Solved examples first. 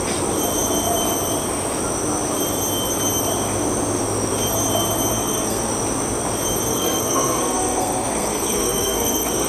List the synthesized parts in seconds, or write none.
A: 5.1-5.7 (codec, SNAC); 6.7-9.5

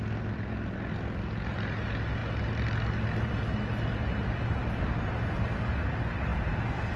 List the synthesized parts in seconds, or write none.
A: none

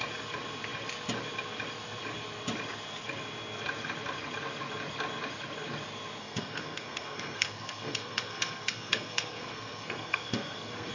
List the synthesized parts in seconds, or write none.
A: 6.2-10.9 (codec, SNAC)

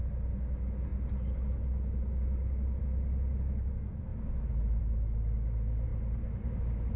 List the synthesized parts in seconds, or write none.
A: none

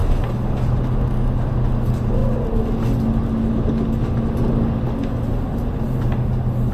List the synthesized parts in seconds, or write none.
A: none